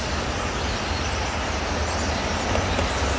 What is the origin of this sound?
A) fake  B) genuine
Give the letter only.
B